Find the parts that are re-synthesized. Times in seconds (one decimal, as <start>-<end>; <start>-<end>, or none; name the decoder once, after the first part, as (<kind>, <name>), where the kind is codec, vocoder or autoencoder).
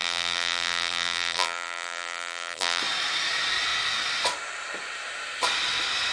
0.0-2.8 (vocoder, BigVGAN v2)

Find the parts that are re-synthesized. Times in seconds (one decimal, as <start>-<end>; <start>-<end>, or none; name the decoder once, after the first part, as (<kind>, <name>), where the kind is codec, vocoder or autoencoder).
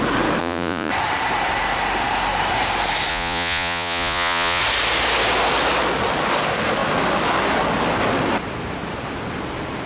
0.4-0.9 (vocoder, Vocos); 3.1-4.6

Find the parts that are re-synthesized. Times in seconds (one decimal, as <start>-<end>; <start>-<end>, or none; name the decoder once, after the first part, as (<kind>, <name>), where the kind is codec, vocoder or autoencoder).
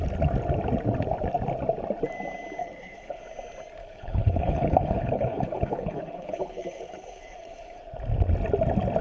2.6-3.2 (codec, HILCodec); 3.8-7.8